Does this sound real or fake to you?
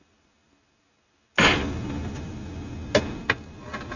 real